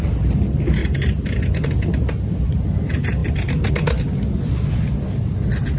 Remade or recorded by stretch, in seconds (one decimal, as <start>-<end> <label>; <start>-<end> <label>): 0.0-0.8 recorded; 0.8-1.7 remade; 1.7-3.2 recorded; 3.2-3.7 remade; 3.7-5.8 recorded